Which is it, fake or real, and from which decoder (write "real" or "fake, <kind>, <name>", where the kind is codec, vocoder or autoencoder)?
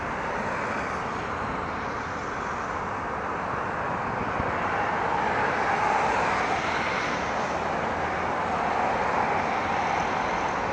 real